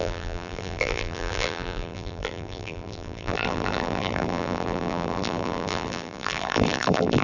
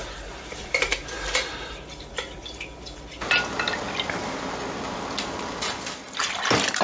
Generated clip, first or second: first